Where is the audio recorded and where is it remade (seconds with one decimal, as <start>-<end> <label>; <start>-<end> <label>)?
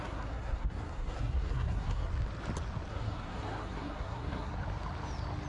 0.0-2.1 remade; 2.1-2.9 recorded; 2.9-4.5 remade; 4.5-5.5 recorded